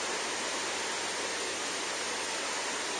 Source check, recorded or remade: recorded